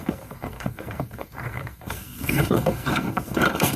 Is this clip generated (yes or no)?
yes